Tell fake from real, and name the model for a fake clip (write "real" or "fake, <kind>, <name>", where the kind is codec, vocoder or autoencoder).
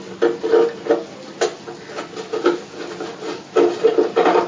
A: real